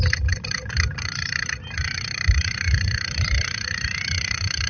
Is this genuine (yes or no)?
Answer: yes